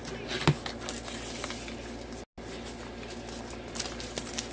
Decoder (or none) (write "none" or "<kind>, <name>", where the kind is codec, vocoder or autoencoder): none